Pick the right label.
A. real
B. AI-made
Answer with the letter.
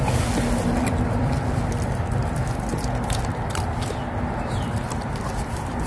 A